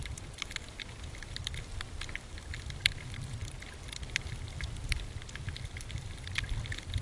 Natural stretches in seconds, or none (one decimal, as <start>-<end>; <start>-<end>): 0.0-7.0